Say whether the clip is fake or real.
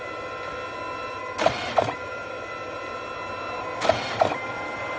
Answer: real